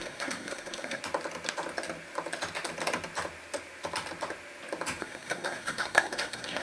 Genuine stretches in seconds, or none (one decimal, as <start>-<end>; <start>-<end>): 1.0-5.0

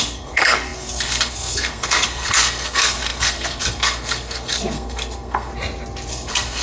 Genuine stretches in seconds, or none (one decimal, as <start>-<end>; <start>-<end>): 5.5-6.1

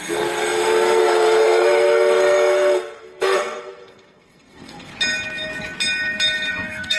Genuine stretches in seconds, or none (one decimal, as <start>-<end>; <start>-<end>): 4.9-6.5

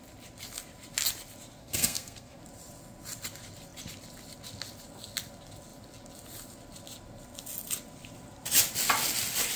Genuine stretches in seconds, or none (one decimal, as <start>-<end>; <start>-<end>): 0.0-1.6; 2.4-9.6

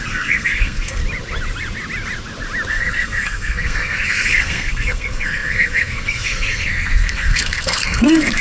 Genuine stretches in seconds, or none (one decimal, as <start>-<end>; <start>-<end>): 1.0-2.7